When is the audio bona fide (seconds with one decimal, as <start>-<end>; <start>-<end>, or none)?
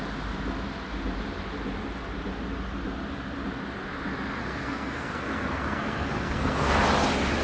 0.0-4.4; 6.7-7.4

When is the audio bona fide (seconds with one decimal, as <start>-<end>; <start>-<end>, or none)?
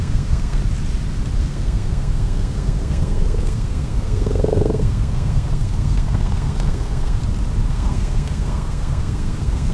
0.6-1.4; 7.2-7.7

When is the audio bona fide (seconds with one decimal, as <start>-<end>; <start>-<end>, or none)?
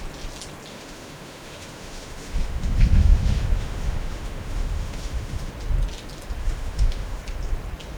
0.0-0.7; 5.5-6.4; 7.2-8.0